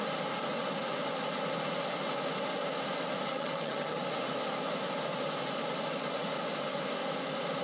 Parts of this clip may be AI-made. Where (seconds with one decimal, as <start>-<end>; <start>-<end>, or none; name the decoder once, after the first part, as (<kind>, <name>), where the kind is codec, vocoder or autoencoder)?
3.3-4.0 (vocoder, HiFi-GAN)